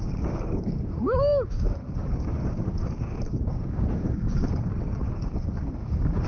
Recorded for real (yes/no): no